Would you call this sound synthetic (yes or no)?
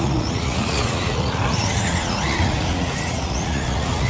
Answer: yes